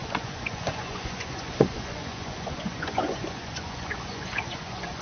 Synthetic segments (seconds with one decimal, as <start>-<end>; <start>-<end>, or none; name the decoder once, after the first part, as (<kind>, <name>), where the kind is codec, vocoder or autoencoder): 0.0-5.0 (vocoder, Vocos)